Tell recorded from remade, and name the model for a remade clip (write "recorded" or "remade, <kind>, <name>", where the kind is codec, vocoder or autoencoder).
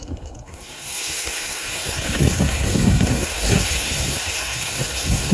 remade, codec, SNAC